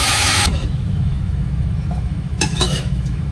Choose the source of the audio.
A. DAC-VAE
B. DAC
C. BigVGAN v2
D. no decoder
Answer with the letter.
A